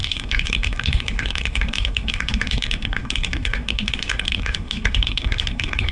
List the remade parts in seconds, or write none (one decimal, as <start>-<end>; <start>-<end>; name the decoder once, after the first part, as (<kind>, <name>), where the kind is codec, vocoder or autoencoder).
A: 0.0-5.9 (codec, SNAC)